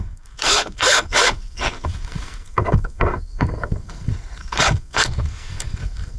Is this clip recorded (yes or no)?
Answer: no